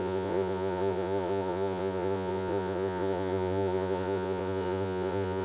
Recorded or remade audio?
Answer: remade